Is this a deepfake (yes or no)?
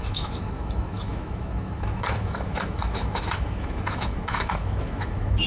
yes